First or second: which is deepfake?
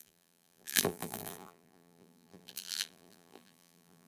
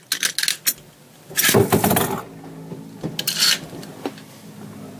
first